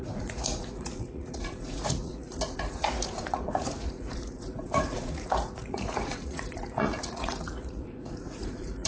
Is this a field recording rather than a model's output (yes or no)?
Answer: no